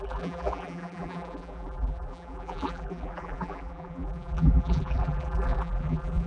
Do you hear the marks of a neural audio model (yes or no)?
yes